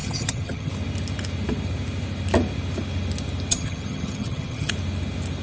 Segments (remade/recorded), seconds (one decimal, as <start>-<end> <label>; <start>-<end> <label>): 0.0-0.7 remade; 0.7-3.5 recorded; 3.5-4.7 remade; 4.7-5.4 recorded